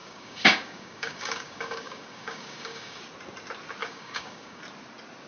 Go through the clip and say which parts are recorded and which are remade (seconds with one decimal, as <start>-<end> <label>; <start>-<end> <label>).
0.0-3.0 remade; 3.0-3.8 recorded; 3.8-4.6 remade; 4.6-5.3 recorded